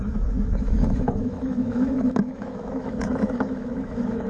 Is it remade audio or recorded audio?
remade